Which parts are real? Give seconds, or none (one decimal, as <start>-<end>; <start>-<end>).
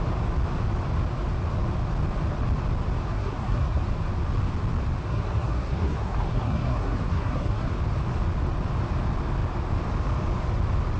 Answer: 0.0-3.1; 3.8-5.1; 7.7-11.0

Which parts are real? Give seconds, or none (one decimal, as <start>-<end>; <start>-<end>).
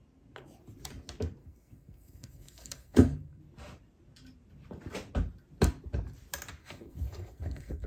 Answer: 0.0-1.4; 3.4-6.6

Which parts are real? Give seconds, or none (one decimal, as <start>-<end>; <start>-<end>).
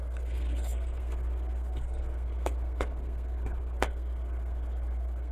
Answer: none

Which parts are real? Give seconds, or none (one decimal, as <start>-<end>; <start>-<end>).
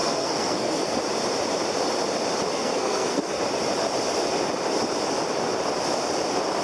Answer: 1.0-2.5; 3.4-6.6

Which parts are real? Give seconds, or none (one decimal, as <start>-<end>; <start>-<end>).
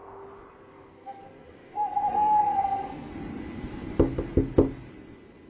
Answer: 0.0-0.5; 3.1-5.5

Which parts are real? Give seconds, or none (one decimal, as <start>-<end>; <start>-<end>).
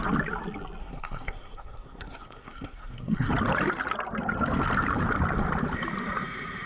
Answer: 0.0-0.8; 3.3-6.7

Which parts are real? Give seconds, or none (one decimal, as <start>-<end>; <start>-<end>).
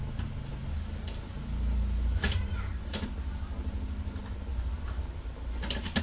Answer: 0.0-6.0